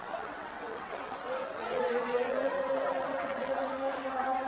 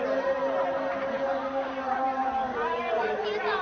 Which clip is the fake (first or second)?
first